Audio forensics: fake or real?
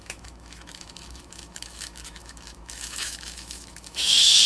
fake